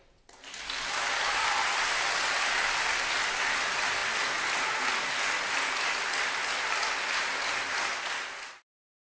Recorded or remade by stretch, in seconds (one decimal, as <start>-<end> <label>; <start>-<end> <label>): 0.0-9.1 recorded